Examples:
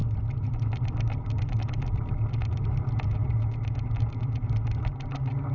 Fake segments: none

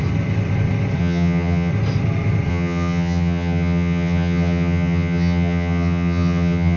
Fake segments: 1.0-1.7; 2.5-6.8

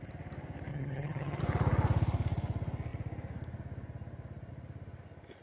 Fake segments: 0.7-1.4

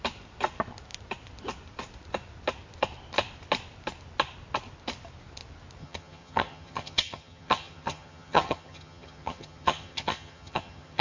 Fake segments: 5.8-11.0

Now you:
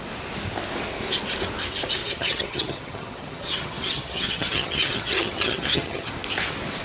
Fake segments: 2.0-6.1